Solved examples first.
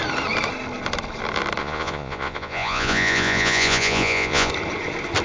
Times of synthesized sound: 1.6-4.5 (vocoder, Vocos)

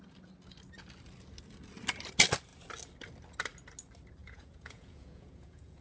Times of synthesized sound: 4.2-5.8 (vocoder, Vocos)

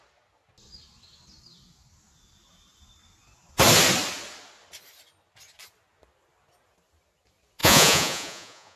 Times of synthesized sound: 7.6-8.8 (vocoder, Vocos)